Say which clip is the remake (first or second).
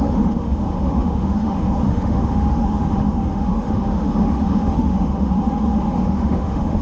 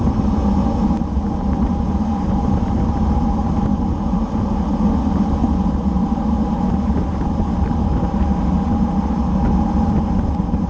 first